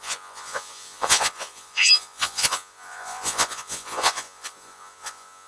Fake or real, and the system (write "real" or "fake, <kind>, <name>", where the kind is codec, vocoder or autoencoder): fake, vocoder, Vocos